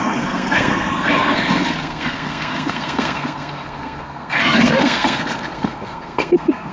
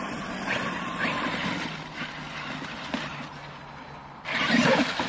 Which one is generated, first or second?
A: first